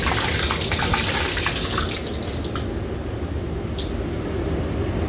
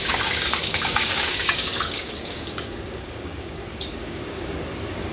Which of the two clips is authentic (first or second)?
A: first